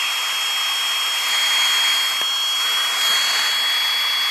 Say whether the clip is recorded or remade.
recorded